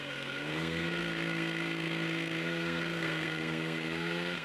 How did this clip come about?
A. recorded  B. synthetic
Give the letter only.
B